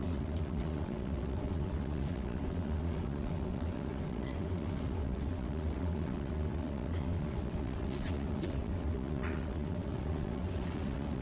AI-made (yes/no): yes